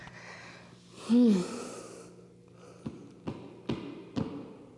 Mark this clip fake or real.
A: real